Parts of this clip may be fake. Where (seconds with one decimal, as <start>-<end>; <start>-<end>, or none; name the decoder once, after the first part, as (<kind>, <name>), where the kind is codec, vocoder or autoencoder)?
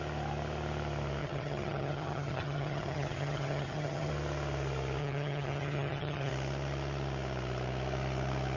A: 1.2-4.1 (vocoder, HiFi-GAN); 5.0-6.3